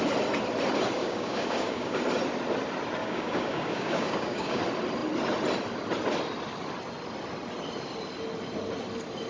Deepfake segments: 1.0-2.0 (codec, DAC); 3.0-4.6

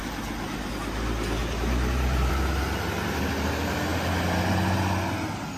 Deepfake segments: 0.0-0.7 (vocoder, BigVGAN v2); 1.4-2.3

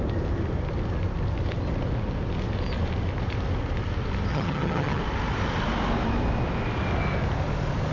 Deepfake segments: 4.3-5.0 (vocoder, HiFi-GAN)

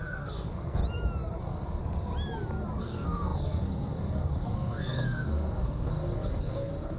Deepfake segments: 0.0-0.8 (codec, SNAC); 1.4-1.8; 2.8-7.0

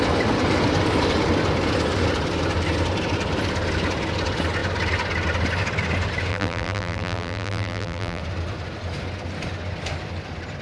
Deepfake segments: 6.3-8.2 (vocoder, BigVGAN v2)

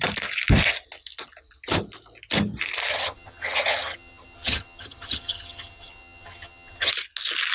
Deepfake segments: 2.9-6.9 (vocoder, HiFi-GAN)

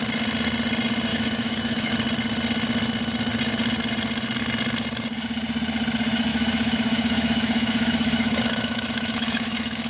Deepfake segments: 1.1-1.9 (autoencoder, DAC-VAE); 6.3-9.9

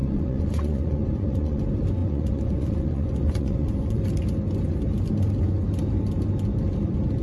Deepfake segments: 0.0-1.6 (vocoder, Vocos); 2.0-4.0